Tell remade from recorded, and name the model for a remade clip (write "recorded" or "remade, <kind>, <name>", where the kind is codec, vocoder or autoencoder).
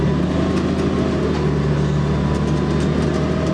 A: recorded